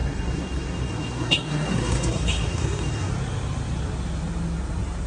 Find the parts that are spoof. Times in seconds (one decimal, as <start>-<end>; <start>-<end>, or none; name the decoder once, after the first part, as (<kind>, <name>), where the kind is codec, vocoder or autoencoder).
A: 0.0-3.1 (codec, SNAC)